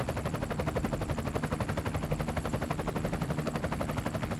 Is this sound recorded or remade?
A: recorded